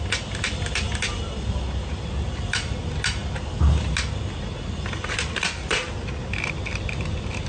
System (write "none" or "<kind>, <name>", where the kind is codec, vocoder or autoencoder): none